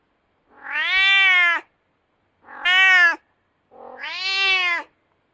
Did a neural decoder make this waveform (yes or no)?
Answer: no